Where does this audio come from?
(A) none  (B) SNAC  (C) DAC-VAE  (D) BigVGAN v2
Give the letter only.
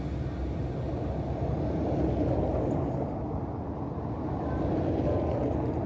A